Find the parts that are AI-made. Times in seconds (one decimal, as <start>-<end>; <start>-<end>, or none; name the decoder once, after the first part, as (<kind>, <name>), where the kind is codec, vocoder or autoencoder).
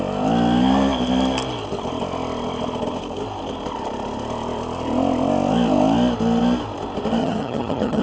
7.2-8.0 (vocoder, HiFi-GAN)